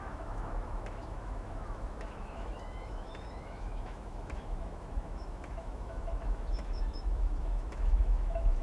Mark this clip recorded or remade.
remade